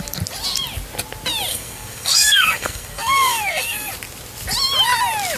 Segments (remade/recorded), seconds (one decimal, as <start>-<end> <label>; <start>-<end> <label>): 0.0-1.5 recorded; 1.5-3.9 remade; 3.9-5.4 recorded